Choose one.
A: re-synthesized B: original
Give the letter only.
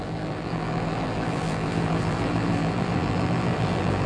A